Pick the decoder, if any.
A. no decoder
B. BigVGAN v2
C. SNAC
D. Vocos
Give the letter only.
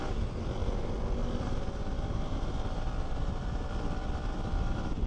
B